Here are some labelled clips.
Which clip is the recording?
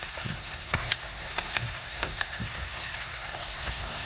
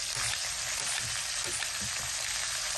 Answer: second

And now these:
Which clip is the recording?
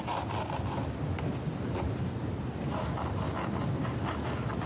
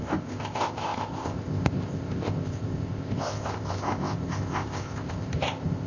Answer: first